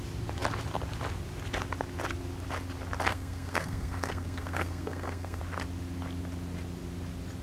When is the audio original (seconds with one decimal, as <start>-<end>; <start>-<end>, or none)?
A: 0.0-3.1; 5.4-7.4